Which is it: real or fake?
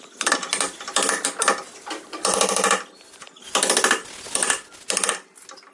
real